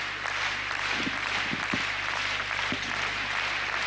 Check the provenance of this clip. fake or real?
real